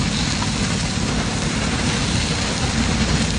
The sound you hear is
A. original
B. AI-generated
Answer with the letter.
A